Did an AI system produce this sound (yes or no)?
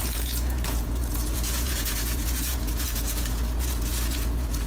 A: yes